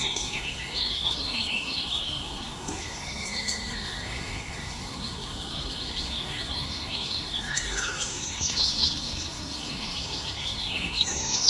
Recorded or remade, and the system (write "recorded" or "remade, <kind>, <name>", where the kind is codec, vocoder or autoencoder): remade, codec, SNAC